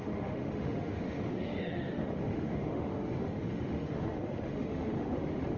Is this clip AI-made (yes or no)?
yes